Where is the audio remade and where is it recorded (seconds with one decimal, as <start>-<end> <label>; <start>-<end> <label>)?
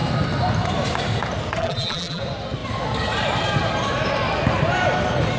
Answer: 0.0-1.6 recorded; 1.6-2.2 remade; 2.2-5.4 recorded